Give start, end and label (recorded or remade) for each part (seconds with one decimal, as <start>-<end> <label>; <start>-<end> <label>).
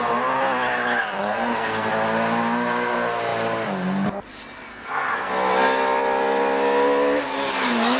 0.0-1.2 recorded; 1.2-1.9 remade; 1.9-4.7 recorded; 4.7-5.3 remade; 5.3-8.0 recorded